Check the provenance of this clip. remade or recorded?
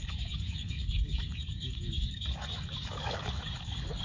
remade